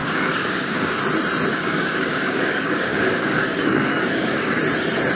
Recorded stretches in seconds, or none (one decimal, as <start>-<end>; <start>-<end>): 1.0-1.5; 4.6-5.2